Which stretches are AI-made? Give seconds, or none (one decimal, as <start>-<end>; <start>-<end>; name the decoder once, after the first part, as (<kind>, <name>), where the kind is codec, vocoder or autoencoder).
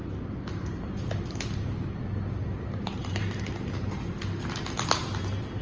2.4-4.2 (vocoder, BigVGAN v2)